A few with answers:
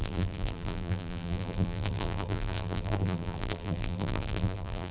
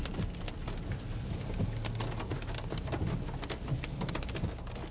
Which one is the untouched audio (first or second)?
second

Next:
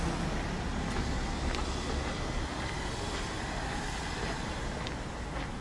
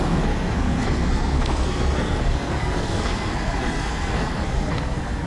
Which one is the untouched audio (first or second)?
first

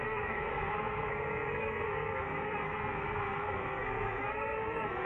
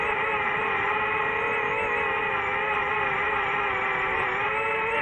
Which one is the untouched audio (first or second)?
second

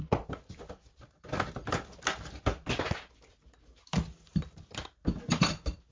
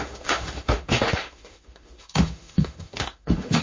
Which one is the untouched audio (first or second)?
first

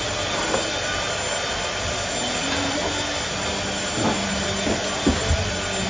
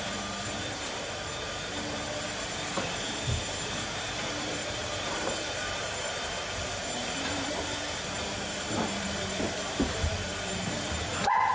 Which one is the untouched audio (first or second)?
first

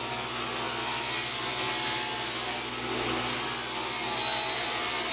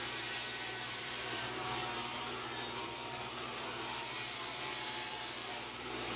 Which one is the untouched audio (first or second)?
first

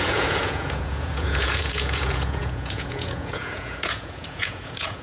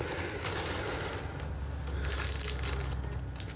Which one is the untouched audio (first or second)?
second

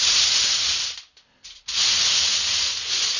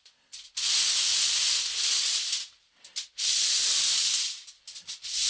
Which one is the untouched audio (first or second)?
first